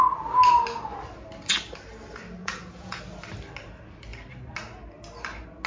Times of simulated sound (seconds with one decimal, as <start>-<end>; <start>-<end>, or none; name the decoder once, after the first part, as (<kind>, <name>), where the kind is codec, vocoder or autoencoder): 2.4-3.0 (vocoder, Vocos)